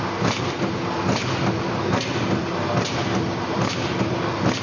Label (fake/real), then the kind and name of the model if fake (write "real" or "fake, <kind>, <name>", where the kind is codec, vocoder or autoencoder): real